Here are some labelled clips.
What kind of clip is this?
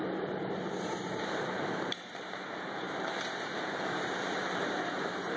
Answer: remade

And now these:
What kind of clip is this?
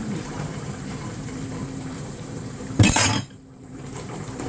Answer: remade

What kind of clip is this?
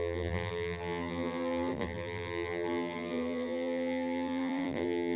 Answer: remade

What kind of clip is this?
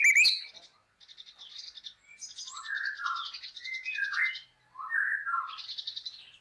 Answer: recorded